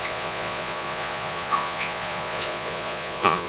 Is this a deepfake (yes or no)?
yes